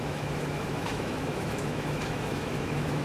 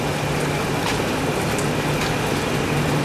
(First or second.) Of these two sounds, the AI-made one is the first